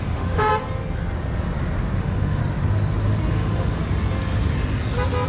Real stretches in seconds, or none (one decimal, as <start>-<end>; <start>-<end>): 0.5-2.0; 2.4-3.3; 3.8-5.3